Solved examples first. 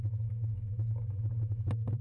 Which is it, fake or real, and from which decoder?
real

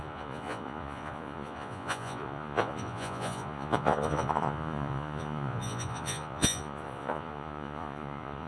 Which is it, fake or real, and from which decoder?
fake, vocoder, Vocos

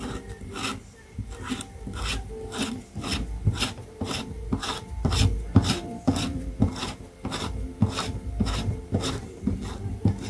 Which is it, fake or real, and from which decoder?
real